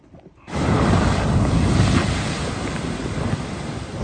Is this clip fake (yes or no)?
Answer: no